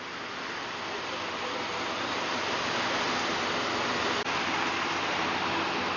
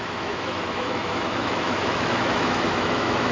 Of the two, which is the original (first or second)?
first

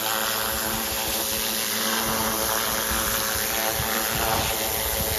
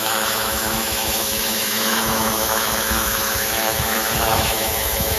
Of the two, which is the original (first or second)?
first